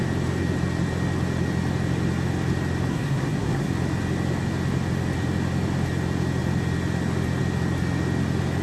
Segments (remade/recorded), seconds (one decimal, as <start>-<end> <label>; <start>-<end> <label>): 0.0-2.9 recorded; 2.9-3.7 remade; 3.7-8.6 recorded